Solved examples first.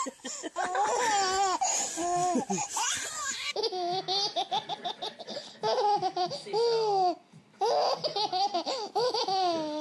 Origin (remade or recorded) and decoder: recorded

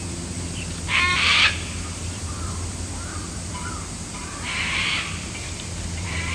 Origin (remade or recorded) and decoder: remade, vocoder, BigVGAN v2